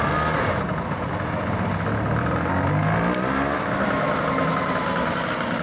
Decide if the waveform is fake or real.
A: real